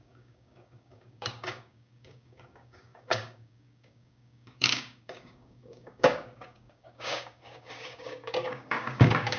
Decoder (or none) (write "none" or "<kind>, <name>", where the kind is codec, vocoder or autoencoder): codec, DAC